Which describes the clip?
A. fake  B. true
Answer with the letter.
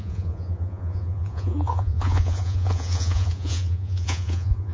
A